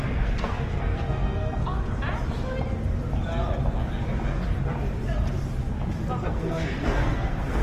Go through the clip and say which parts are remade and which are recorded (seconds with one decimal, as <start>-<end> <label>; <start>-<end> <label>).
0.0-1.6 remade; 1.6-6.2 recorded; 6.2-7.6 remade